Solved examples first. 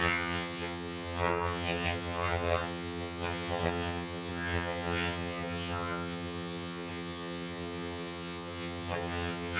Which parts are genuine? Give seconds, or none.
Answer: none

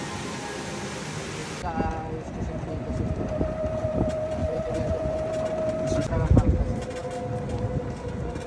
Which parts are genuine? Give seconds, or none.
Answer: 0.0-4.4; 5.2-8.5

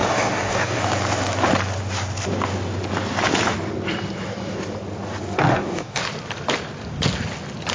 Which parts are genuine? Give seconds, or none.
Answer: 0.8-5.5; 6.0-7.7

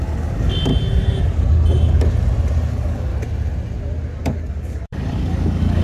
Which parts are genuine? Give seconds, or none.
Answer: 0.7-2.7; 3.1-4.2

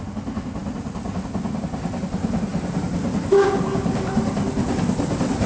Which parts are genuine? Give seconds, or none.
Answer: 0.0-5.5

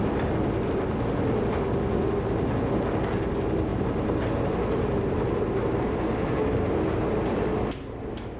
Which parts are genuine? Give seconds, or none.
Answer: 0.0-8.4